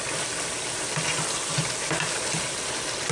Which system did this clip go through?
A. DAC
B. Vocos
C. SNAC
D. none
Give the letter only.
D